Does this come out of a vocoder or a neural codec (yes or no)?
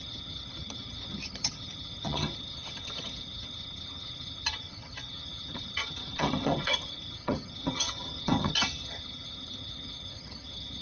yes